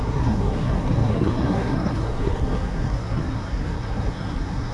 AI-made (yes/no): yes